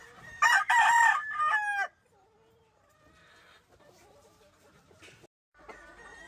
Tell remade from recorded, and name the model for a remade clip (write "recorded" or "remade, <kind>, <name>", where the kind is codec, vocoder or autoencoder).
recorded